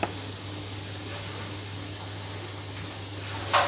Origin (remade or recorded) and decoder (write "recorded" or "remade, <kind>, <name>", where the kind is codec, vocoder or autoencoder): recorded